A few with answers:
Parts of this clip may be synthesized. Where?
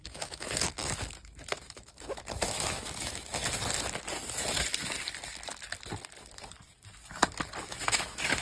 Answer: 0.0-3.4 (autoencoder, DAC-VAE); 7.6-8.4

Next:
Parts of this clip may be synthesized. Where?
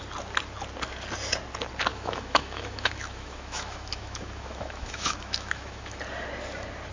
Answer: 1.9-6.0 (autoencoder, DAC-VAE)